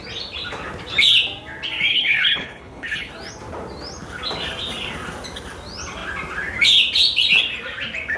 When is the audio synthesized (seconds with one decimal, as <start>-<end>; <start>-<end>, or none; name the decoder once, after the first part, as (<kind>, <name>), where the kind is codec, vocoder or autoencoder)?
1.9-3.1 (codec, HILCodec)